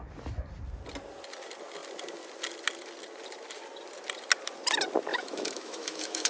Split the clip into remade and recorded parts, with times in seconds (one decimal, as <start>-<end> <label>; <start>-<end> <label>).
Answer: 0.0-5.1 recorded; 5.1-6.3 remade